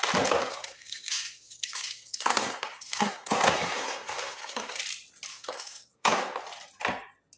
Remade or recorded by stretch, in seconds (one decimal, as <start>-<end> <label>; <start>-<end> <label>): 0.0-0.4 recorded; 0.4-4.8 remade; 4.8-5.3 recorded; 5.3-6.2 remade; 6.2-7.4 recorded